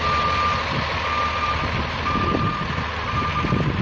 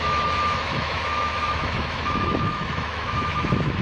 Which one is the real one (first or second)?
first